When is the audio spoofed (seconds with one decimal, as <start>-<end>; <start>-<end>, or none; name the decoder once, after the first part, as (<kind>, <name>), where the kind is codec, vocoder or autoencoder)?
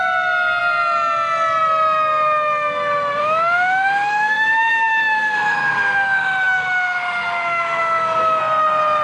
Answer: 3.2-8.4 (autoencoder, DAC-VAE)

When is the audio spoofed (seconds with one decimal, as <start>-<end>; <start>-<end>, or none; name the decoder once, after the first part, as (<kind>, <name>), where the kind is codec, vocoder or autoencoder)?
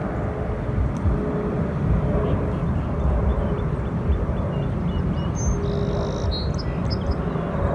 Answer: none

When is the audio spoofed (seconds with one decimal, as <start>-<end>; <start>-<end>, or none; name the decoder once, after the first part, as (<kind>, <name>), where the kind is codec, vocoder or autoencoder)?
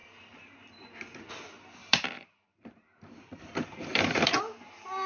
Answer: 0.0-1.3 (vocoder, BigVGAN v2); 1.8-4.4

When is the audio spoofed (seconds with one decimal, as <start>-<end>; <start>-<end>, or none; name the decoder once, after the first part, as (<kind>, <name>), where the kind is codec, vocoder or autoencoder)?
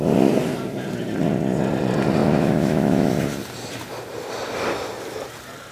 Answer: 2.2-3.1 (autoencoder, DAC-VAE)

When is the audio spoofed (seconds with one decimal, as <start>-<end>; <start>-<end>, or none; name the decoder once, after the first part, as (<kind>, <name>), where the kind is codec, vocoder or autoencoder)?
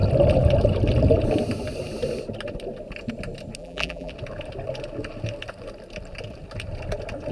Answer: 3.6-4.1 (vocoder, BigVGAN v2)